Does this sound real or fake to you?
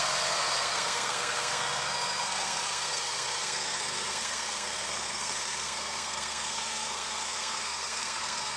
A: fake